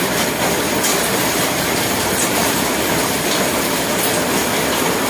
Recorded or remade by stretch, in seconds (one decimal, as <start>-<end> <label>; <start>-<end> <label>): 0.0-0.9 recorded; 0.9-4.0 remade; 4.0-5.1 recorded